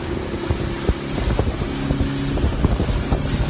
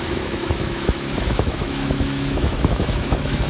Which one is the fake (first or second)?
second